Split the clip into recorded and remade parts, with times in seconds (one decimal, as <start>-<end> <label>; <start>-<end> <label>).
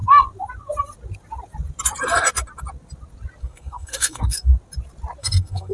0.0-3.4 recorded; 3.4-4.5 remade; 4.5-5.2 recorded; 5.2-5.7 remade